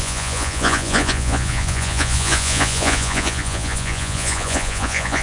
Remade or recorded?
remade